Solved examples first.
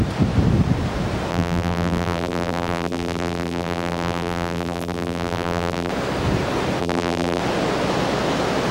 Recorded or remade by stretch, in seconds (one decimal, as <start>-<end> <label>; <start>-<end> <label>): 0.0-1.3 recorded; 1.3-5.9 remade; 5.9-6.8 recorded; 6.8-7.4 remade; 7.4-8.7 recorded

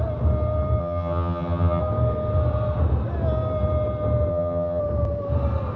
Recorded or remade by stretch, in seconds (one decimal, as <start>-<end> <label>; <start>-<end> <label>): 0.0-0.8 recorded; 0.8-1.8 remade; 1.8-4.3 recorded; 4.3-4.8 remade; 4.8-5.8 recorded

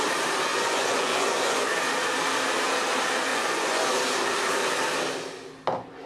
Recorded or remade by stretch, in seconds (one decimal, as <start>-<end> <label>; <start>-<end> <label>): 0.0-0.5 recorded; 0.5-1.7 remade; 1.7-3.3 recorded; 3.3-3.9 remade; 3.9-6.1 recorded

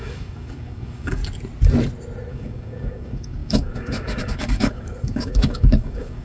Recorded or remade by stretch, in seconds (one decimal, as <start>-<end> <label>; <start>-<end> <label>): 0.0-1.2 remade; 1.2-2.3 recorded; 2.3-6.2 remade

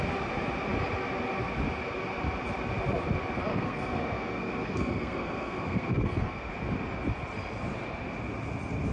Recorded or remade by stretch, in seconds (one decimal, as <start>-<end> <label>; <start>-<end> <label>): 0.0-3.5 recorded; 3.5-6.5 remade; 6.5-8.9 recorded